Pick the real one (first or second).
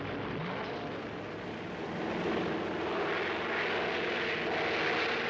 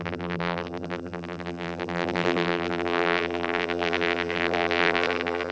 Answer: first